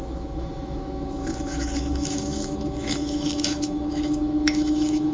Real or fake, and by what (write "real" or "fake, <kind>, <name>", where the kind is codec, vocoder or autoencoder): fake, autoencoder, DAC-VAE